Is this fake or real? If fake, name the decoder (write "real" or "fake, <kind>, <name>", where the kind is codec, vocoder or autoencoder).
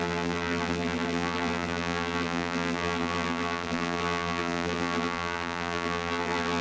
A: fake, vocoder, BigVGAN v2